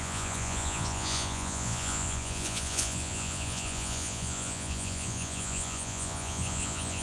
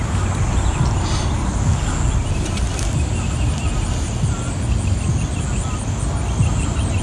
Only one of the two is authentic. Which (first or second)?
second